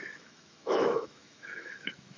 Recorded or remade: remade